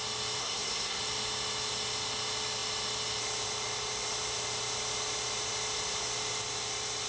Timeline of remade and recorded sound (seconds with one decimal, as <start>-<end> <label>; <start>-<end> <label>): 0.0-0.4 recorded; 0.4-1.0 remade; 1.0-7.1 recorded